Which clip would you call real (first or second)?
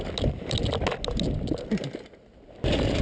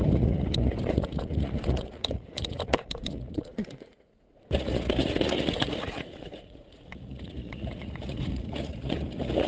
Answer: first